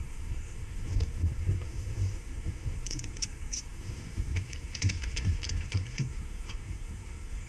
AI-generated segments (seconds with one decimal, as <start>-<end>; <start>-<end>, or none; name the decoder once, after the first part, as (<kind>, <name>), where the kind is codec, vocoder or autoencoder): 0.0-7.5 (codec, SNAC)